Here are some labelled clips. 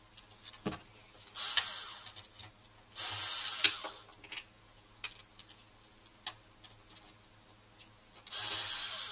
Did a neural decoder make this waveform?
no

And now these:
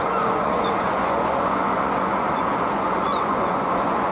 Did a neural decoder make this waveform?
yes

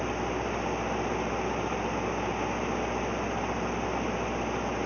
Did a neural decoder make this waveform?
no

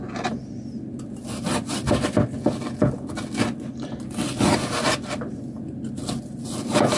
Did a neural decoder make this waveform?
no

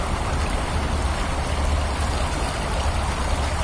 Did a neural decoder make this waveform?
no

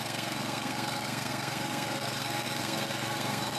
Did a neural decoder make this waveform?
yes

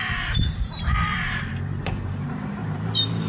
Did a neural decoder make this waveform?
yes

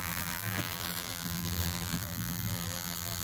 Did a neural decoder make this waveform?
yes